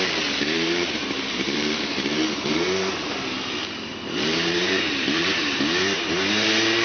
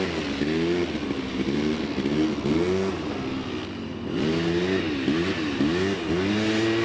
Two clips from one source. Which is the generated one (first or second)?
first